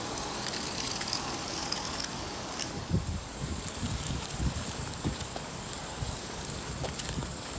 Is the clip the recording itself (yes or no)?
no